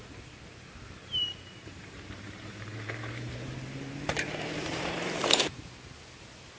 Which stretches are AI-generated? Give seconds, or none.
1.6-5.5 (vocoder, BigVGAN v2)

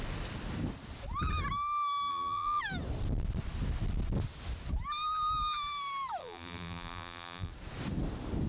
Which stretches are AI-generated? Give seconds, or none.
2.1-2.6 (vocoder, BigVGAN v2); 6.2-7.5

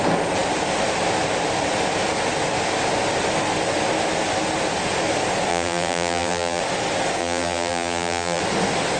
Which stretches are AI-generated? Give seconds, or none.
5.5-6.6 (vocoder, BigVGAN v2); 7.2-8.4

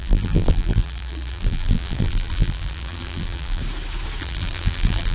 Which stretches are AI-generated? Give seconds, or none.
0.0-3.6 (vocoder, BigVGAN v2); 4.2-5.1

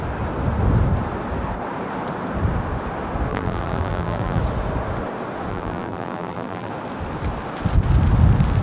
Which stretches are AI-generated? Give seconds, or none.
3.3-4.4 (vocoder, BigVGAN v2); 5.5-6.7

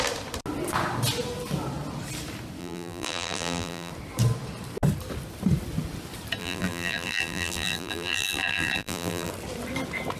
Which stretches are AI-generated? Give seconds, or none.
2.6-3.9 (vocoder, BigVGAN v2); 6.4-9.3

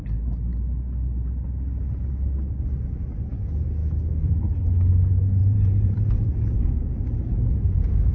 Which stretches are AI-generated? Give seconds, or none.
5.4-6.3 (vocoder, BigVGAN v2)

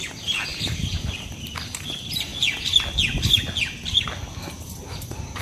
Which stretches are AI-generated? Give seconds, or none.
0.0-2.3 (vocoder, BigVGAN v2); 4.6-5.4